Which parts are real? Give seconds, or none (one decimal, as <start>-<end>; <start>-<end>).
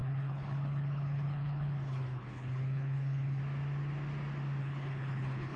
3.4-4.6